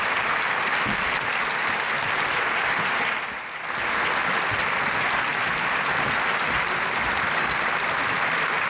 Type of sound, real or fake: real